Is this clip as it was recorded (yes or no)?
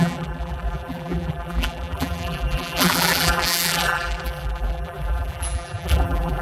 no